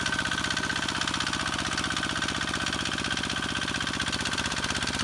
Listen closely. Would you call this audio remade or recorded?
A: remade